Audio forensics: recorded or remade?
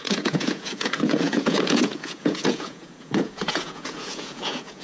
remade